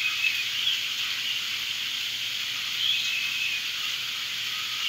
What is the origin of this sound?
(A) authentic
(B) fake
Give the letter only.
A